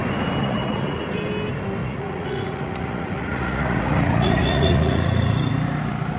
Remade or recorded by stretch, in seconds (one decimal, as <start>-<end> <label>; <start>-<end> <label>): 0.0-0.4 recorded; 0.4-1.0 remade; 1.0-1.8 recorded; 1.8-5.5 remade; 5.5-6.2 recorded